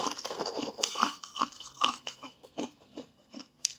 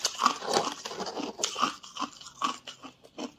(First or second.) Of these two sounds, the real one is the second